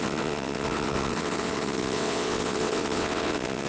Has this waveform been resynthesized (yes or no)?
yes